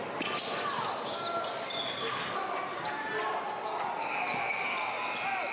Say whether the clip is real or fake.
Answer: real